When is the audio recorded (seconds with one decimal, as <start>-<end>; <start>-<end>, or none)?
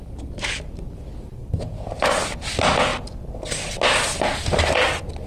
0.0-5.3